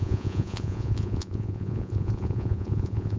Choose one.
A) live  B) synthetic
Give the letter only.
B